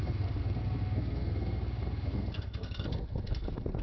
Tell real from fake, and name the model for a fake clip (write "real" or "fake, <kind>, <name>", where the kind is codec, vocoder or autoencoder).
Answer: fake, codec, SNAC